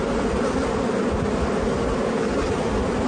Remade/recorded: recorded